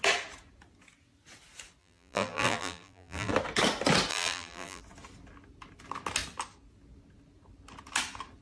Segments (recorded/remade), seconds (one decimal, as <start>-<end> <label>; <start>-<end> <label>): 0.0-1.8 recorded; 1.8-3.3 remade; 3.3-4.1 recorded; 4.1-4.8 remade; 4.8-8.4 recorded